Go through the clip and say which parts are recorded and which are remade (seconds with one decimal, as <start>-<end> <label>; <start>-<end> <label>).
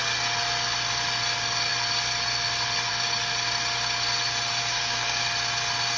0.0-4.6 recorded; 4.6-5.2 remade; 5.2-6.0 recorded